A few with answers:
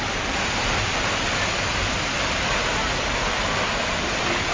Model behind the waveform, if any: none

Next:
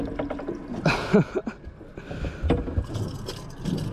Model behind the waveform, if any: none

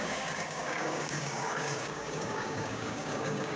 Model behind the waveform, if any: codec, DAC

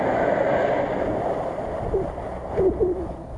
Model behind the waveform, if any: none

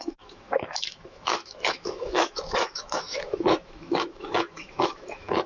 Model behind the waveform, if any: autoencoder, DAC-VAE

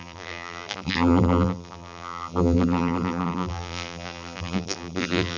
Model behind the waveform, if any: vocoder, BigVGAN v2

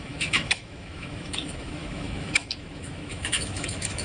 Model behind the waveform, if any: autoencoder, DAC-VAE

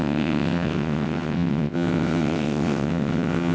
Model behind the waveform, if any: vocoder, WaveNeXt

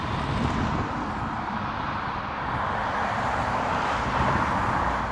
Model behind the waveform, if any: vocoder, BigVGAN v2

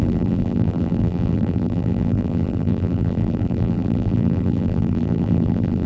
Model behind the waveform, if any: vocoder, BigVGAN v2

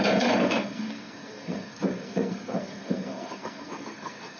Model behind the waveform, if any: codec, SNAC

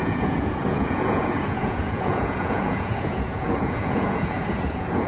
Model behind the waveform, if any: vocoder, Vocos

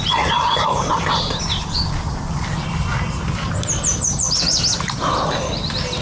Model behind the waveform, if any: none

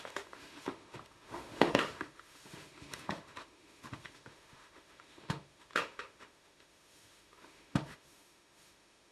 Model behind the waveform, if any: autoencoder, DAC-VAE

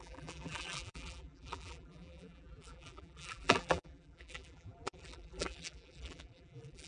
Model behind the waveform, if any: vocoder, BigVGAN v2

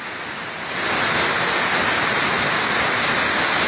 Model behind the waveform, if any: none